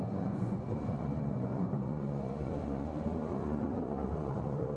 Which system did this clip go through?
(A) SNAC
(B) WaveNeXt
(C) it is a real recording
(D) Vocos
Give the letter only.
D